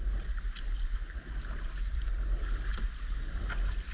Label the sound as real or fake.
real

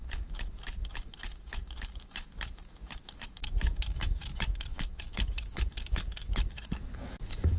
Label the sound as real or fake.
fake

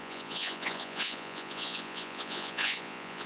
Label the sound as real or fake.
fake